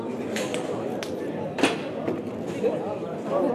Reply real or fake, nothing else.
real